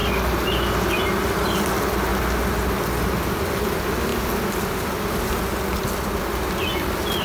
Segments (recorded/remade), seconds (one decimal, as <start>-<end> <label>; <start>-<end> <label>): 0.0-7.2 recorded